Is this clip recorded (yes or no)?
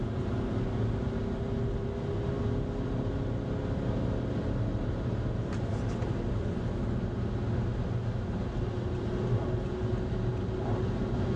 yes